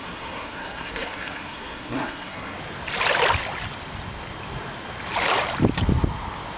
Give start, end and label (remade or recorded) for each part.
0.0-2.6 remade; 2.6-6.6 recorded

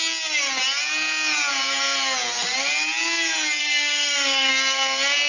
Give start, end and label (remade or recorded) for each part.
0.0-3.6 recorded; 3.6-4.5 remade; 4.5-5.3 recorded

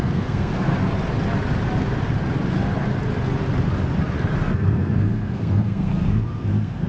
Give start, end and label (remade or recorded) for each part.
0.0-0.7 remade; 0.7-4.5 recorded; 4.5-6.9 remade